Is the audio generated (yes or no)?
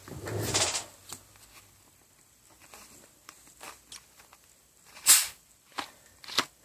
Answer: no